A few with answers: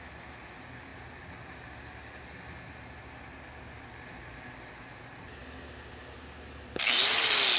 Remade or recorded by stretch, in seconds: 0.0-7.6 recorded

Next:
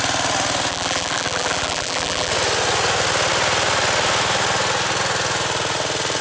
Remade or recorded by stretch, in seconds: 0.0-0.7 recorded; 0.7-2.3 remade; 2.3-6.2 recorded

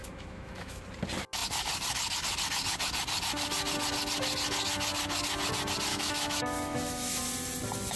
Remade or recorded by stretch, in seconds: 0.0-0.8 remade; 0.8-5.9 recorded; 5.9-7.2 remade; 7.2-8.0 recorded

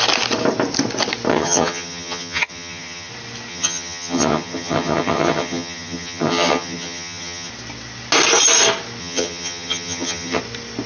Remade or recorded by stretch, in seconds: 0.0-1.3 recorded; 1.3-3.1 remade; 3.1-3.5 recorded; 3.5-7.5 remade; 7.5-9.0 recorded; 9.0-10.4 remade; 10.4-10.9 recorded